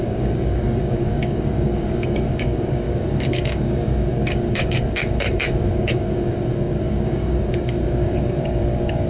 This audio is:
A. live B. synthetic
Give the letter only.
B